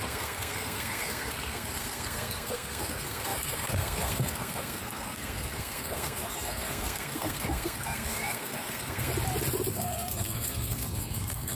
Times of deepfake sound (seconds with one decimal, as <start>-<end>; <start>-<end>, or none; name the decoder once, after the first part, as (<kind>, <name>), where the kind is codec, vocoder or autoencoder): 0.0-9.1 (codec, SNAC); 9.7-11.5